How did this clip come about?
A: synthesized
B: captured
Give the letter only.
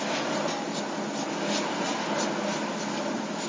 B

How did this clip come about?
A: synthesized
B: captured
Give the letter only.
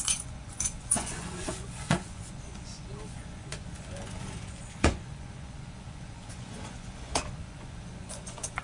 A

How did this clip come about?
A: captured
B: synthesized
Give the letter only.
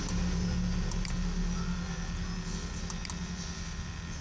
A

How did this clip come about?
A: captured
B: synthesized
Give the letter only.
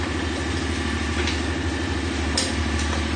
A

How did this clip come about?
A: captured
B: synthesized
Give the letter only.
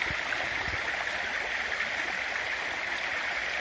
A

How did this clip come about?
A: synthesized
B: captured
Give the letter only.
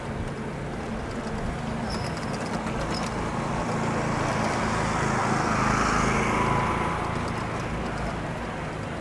B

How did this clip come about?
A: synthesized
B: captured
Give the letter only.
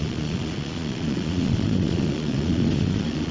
A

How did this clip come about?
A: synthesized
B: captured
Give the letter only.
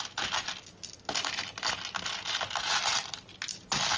B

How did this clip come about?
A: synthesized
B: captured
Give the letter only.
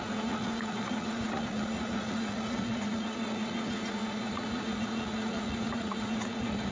A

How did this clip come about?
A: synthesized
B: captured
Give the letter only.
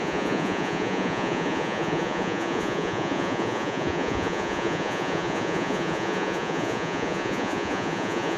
A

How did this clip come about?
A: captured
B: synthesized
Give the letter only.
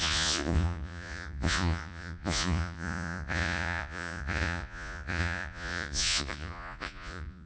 B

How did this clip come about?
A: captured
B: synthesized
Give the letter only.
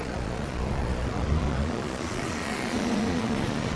B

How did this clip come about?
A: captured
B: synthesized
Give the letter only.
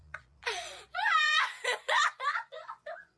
B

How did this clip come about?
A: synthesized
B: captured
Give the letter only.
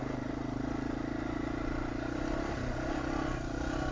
B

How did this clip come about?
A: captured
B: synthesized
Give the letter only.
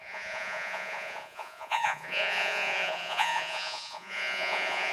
B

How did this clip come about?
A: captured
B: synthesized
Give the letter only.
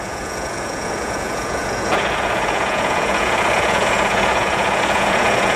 B